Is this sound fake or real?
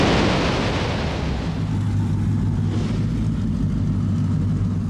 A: real